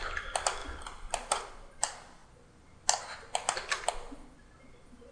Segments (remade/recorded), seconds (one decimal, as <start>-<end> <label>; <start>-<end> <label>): 0.0-5.1 recorded

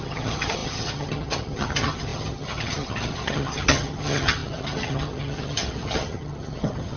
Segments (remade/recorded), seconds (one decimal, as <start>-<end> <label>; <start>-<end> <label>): 0.0-7.0 remade

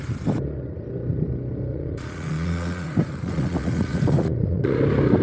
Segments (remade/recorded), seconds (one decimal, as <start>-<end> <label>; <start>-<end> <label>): 0.0-1.7 recorded; 1.7-4.8 remade; 4.8-5.2 recorded

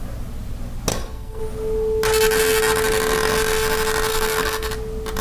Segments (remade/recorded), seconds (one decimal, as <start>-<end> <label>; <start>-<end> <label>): 0.0-0.9 recorded; 0.9-1.4 remade; 1.4-4.1 recorded; 4.1-4.7 remade; 4.7-5.2 recorded

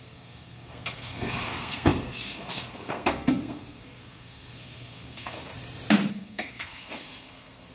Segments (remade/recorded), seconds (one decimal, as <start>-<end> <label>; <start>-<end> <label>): 0.0-5.5 remade; 5.5-6.1 recorded; 6.1-7.7 remade

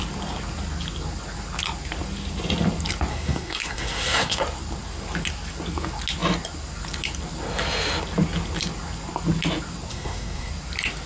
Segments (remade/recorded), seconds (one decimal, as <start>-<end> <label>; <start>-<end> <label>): 0.0-3.1 recorded; 3.1-4.4 remade; 4.4-9.9 recorded; 9.9-10.5 remade; 10.5-11.1 recorded

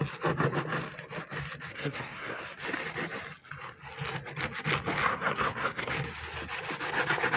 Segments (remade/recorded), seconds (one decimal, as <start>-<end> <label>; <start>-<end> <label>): 0.0-1.7 recorded; 1.7-2.4 remade; 2.4-5.1 recorded; 5.1-5.9 remade; 5.9-7.4 recorded